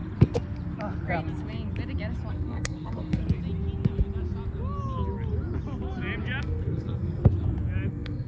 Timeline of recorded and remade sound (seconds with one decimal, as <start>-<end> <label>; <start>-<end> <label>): 0.0-2.3 recorded; 2.3-3.2 remade; 3.2-6.4 recorded; 6.4-7.2 remade; 7.2-7.9 recorded; 7.9-8.3 remade